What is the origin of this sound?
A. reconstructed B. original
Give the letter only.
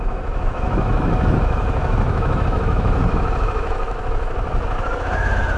A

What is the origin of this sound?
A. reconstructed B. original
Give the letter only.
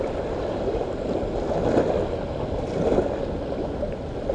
B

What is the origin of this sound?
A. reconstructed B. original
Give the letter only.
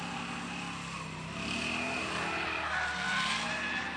B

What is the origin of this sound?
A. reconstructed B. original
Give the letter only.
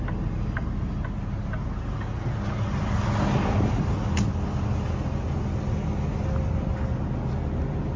B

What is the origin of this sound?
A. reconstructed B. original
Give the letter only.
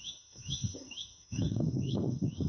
A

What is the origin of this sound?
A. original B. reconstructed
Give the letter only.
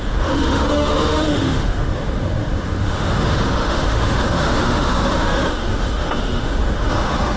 B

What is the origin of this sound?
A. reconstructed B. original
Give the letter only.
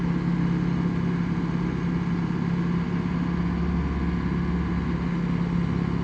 B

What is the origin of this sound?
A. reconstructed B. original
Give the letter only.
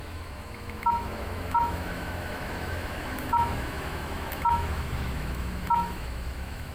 A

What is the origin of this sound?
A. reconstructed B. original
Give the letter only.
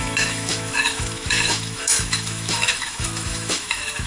A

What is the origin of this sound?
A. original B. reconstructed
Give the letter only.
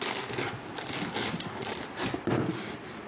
A